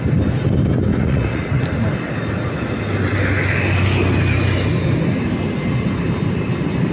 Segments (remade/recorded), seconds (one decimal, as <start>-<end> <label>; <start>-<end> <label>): 0.0-0.9 recorded; 0.9-1.6 remade; 1.6-6.9 recorded